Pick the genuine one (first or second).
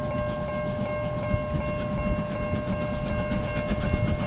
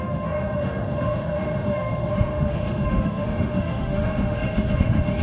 first